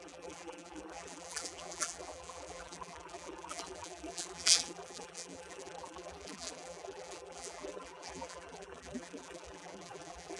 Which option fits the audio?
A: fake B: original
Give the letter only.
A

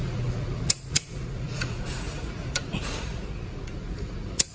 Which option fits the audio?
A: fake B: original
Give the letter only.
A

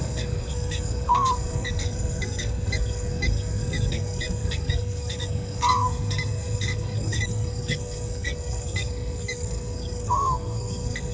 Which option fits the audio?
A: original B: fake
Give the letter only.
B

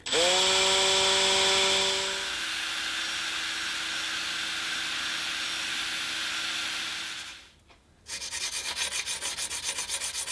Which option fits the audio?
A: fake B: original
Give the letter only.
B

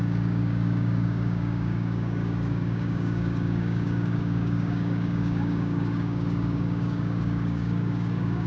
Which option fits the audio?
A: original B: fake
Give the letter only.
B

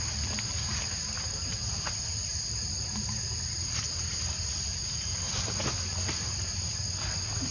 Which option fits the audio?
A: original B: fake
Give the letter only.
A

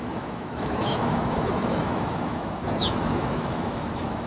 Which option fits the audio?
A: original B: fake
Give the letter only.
B